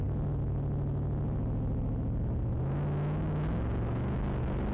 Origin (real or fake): real